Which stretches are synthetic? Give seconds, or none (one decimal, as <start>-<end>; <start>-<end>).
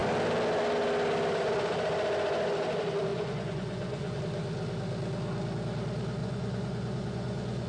3.1-4.2; 6.2-7.7